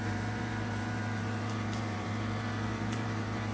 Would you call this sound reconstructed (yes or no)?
yes